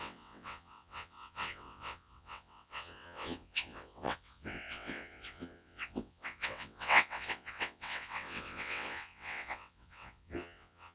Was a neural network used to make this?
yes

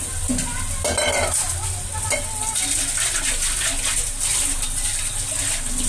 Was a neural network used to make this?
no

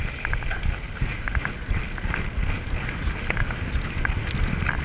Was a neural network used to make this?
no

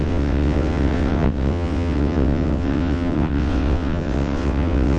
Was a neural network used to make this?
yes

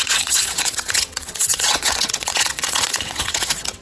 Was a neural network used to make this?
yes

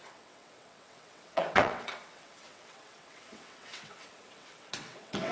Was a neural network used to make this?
yes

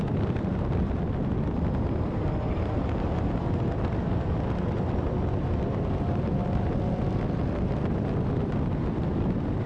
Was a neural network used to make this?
no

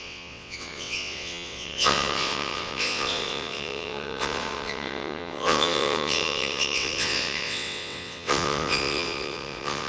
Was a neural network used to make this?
yes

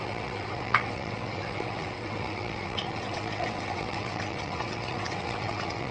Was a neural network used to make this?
yes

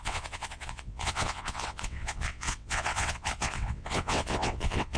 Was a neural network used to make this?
yes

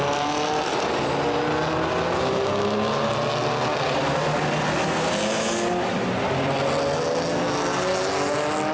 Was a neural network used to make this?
no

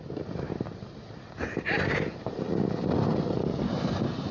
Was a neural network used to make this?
no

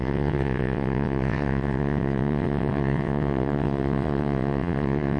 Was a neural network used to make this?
yes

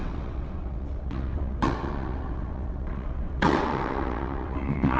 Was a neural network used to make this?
yes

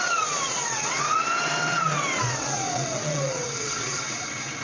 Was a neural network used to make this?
yes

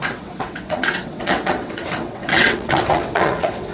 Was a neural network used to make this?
yes